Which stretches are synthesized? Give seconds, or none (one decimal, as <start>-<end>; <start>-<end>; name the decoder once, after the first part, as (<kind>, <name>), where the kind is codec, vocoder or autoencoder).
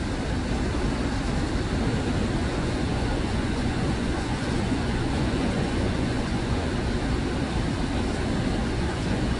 2.4-6.7 (vocoder, Vocos); 8.6-9.4